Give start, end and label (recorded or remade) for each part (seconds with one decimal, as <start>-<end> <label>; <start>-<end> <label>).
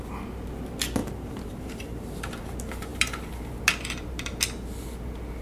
0.0-1.0 recorded; 1.0-2.5 remade; 2.5-5.4 recorded